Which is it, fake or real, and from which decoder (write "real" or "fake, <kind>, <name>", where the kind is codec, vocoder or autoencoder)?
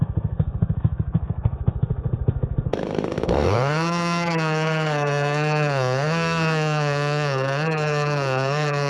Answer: fake, codec, SNAC